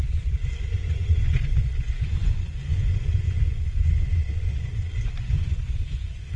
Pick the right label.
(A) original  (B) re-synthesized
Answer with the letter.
B